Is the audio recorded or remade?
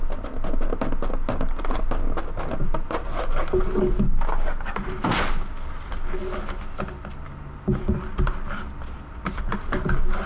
recorded